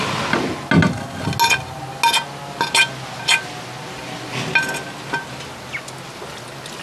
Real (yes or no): yes